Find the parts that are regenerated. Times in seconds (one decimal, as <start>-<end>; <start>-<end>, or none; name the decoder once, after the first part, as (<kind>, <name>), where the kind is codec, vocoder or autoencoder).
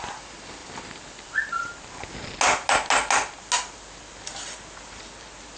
none